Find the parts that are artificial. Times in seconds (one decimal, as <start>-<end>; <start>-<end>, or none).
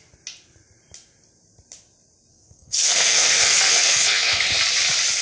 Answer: 2.3-4.4